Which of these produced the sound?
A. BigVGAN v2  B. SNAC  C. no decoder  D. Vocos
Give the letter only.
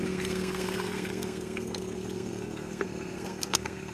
B